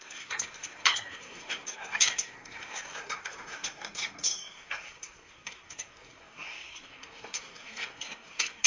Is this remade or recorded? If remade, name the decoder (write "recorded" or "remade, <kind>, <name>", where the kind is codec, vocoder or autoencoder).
remade, codec, SNAC